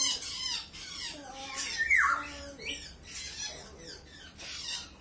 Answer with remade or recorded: recorded